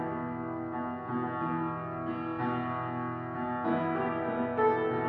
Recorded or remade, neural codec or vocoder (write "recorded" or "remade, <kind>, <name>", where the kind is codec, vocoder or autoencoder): recorded